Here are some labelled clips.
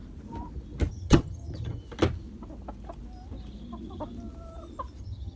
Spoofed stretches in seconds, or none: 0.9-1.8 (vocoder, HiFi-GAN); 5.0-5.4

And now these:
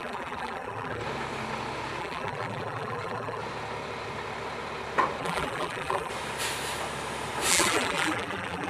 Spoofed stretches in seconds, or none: 0.0-1.0 (vocoder, BigVGAN v2); 2.0-3.4; 5.2-6.1; 7.5-8.7